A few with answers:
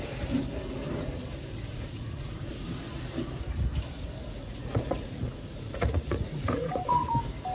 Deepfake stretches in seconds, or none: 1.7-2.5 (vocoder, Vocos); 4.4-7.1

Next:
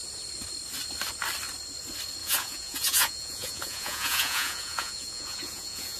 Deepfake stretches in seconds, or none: 2.2-6.0 (vocoder, Vocos)